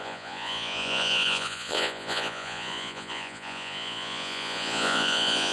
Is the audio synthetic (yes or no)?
yes